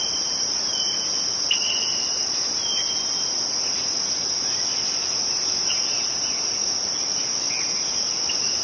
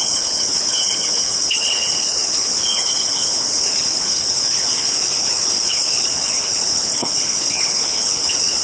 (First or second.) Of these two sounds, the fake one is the second